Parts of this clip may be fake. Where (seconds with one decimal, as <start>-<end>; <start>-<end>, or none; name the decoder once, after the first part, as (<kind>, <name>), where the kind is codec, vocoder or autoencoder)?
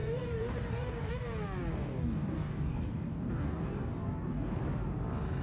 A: 0.0-1.1 (codec, DAC); 1.7-4.6